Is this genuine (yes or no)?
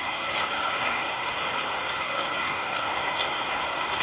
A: no